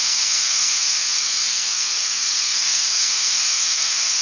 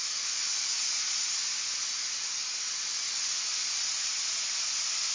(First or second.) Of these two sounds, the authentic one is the second